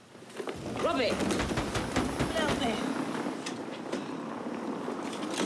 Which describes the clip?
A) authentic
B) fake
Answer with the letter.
A